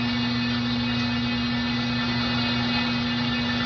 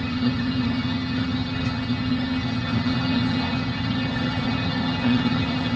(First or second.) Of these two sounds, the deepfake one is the second